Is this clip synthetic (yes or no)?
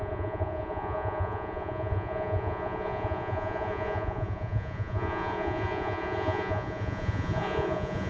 yes